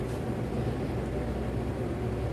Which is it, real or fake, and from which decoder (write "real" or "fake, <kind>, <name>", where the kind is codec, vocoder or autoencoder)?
real